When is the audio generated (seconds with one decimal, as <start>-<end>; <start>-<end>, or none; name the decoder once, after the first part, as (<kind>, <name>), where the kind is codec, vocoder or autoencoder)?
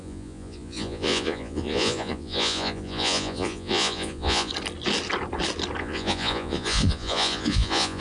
0.0-4.5 (vocoder, Vocos); 5.8-8.0